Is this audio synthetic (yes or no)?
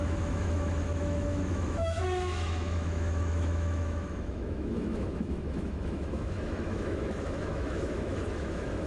yes